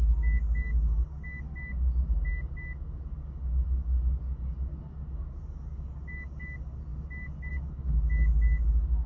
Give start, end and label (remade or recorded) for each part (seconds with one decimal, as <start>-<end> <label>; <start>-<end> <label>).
0.0-9.1 recorded